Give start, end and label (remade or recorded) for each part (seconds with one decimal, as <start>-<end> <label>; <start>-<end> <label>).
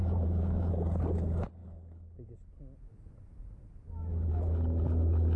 0.0-0.7 remade; 0.7-5.4 recorded